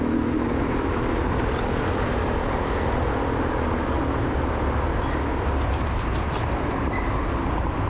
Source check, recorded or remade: recorded